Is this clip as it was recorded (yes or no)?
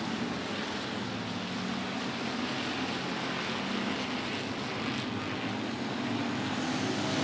yes